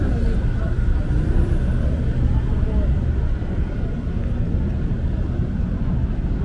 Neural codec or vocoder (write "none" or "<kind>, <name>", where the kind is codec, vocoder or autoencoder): none